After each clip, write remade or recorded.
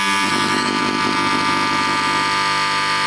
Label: recorded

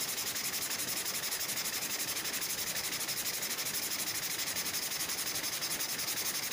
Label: recorded